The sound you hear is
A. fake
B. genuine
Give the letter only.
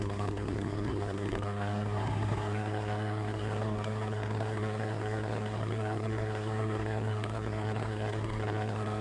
A